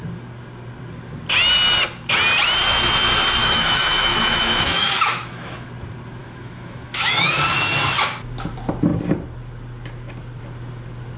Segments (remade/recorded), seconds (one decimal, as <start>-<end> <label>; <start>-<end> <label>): 0.0-3.4 recorded; 3.4-5.7 remade; 5.7-6.2 recorded; 6.2-7.3 remade; 7.3-11.2 recorded

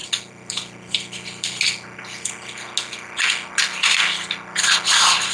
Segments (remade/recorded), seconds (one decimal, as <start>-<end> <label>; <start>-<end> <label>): 0.0-5.3 recorded